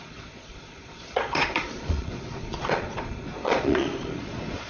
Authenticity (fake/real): fake